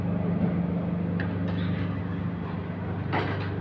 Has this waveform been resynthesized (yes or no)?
no